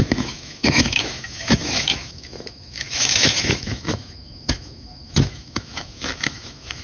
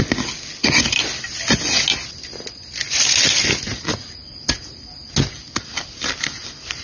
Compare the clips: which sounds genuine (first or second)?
second